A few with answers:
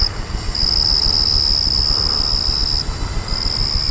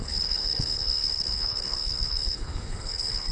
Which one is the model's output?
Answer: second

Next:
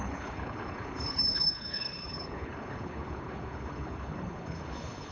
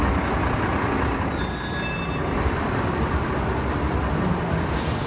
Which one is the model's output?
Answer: first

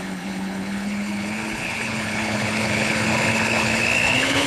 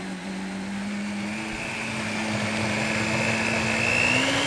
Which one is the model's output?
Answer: first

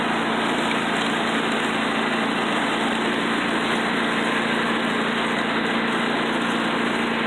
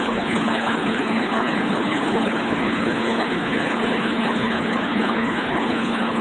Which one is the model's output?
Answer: second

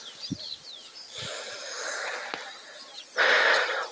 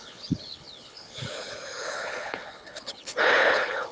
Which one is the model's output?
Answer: second